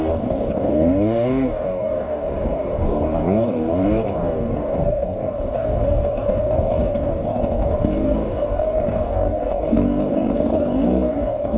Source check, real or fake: fake